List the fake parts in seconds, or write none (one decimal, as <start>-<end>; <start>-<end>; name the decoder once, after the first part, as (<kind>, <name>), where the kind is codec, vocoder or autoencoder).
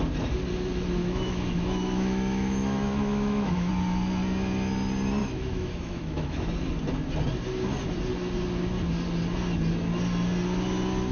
1.0-3.7 (autoencoder, DAC-VAE); 5.2-6.5